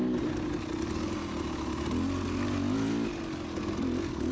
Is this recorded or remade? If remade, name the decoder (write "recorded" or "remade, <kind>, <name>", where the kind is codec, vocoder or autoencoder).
recorded